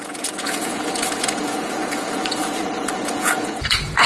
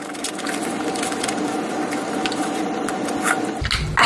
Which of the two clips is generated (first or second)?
first